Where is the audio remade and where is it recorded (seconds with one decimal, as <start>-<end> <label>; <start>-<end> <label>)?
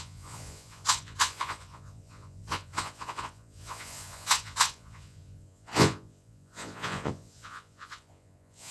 0.0-8.7 remade